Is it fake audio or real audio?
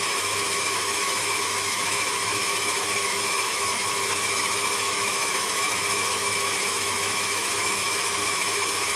fake